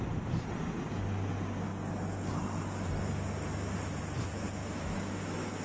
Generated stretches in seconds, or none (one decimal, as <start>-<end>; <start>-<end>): 4.6-5.6